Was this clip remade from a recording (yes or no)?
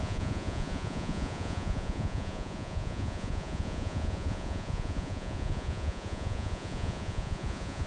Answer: yes